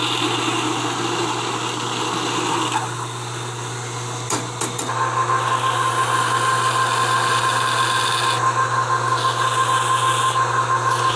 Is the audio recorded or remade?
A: recorded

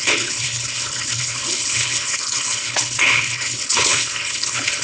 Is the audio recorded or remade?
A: remade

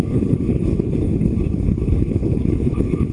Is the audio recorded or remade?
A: remade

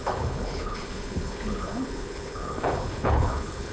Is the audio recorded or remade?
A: remade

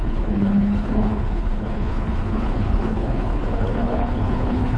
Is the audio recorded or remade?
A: remade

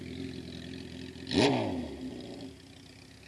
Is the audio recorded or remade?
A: recorded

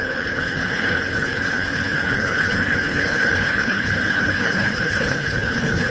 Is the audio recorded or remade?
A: remade